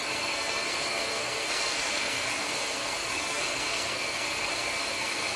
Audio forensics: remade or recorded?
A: remade